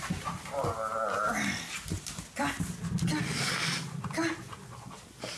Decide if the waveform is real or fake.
real